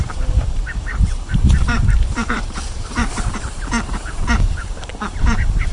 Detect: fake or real fake